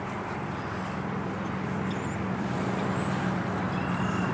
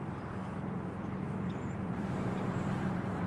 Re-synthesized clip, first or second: second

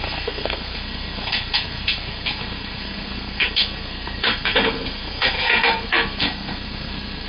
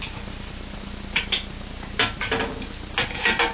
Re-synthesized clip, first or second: first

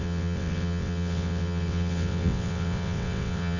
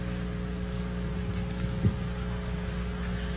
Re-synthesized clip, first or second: first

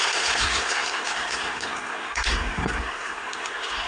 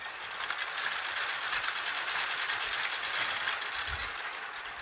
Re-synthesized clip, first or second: first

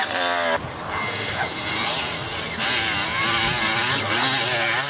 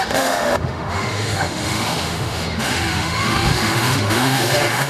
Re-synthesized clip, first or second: second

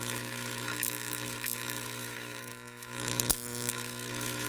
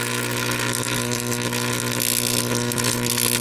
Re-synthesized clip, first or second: first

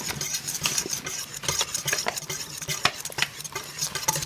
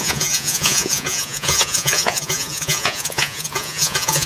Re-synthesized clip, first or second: second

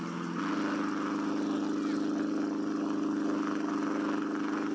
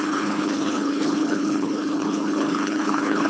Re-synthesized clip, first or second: second